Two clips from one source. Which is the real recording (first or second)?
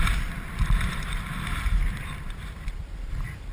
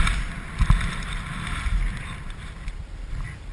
second